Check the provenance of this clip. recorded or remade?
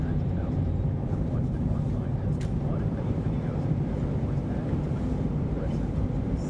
remade